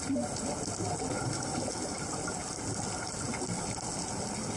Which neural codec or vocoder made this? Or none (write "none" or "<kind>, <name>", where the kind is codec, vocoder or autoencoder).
none